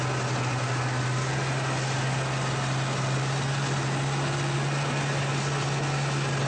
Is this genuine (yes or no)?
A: yes